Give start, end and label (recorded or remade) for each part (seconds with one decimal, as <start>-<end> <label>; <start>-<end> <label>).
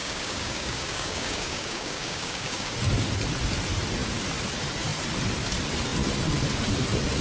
0.0-2.7 remade; 2.7-7.2 recorded